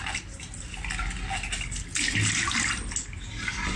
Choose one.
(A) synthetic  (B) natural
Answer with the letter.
B